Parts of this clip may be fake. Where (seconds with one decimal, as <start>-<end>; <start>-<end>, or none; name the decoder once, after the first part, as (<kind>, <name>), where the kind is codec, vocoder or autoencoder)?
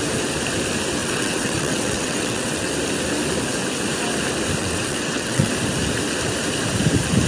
1.0-2.7 (vocoder, WaveNeXt); 4.6-5.5